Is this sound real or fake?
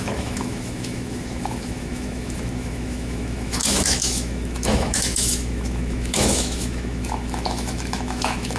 fake